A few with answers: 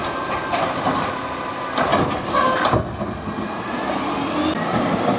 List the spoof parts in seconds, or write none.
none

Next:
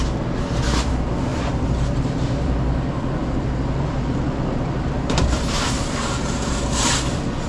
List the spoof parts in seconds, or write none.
1.3-2.5 (vocoder, BigVGAN v2); 3.2-6.9

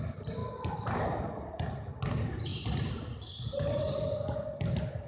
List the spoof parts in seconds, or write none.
none

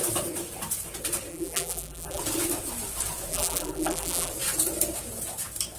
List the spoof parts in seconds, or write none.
1.3-2.2 (vocoder, BigVGAN v2); 3.3-4.3

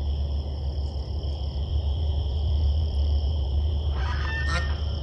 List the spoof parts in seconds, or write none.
1.7-4.0 (vocoder, BigVGAN v2)

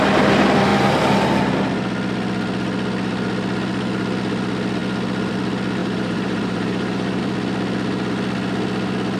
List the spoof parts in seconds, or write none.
5.8-7.2 (vocoder, BigVGAN v2)

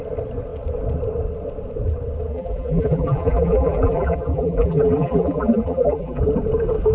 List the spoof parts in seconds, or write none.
2.3-6.2 (vocoder, BigVGAN v2)

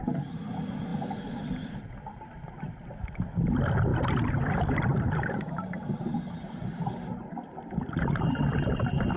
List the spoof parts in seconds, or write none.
0.9-3.5 (vocoder, BigVGAN v2); 3.9-8.2